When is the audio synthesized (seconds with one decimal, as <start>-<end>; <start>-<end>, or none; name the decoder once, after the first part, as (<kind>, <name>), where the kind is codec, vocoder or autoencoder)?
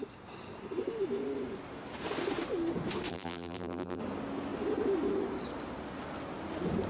3.1-4.0 (vocoder, BigVGAN v2)